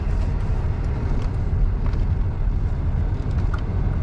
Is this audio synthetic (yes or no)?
no